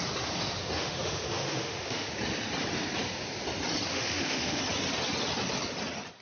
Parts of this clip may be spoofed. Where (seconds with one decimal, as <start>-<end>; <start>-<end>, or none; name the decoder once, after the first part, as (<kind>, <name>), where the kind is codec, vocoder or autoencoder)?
0.8-2.1 (autoencoder, DAC-VAE); 3.9-4.6